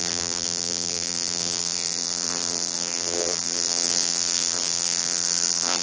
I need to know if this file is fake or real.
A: fake